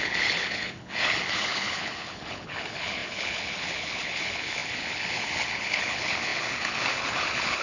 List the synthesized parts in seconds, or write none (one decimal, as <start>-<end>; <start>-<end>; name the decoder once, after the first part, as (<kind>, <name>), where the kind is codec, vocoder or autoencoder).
0.0-7.6 (codec, HILCodec)